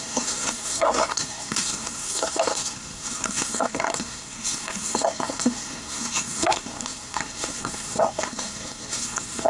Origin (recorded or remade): remade